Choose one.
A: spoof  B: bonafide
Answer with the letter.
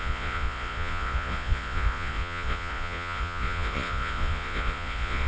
A